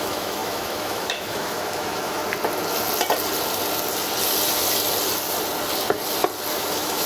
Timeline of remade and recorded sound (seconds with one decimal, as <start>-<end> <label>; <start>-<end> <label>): 0.0-2.2 remade; 2.2-6.5 recorded; 6.5-7.1 remade